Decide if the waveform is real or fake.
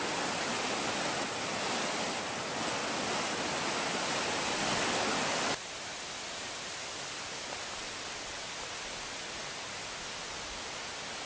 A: real